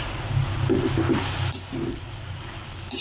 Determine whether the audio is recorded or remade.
recorded